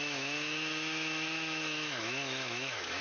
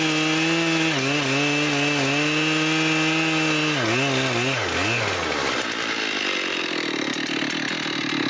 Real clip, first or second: second